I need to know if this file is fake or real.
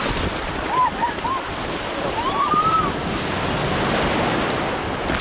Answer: real